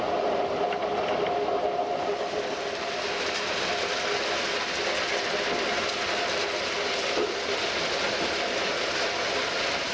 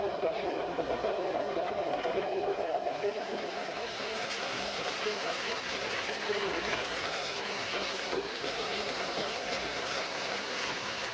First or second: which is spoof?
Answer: second